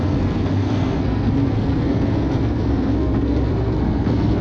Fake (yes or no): yes